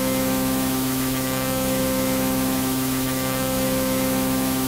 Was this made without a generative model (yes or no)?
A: no